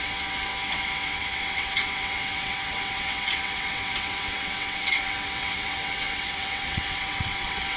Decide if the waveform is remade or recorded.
remade